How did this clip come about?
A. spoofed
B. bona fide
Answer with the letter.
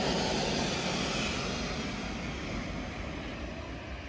B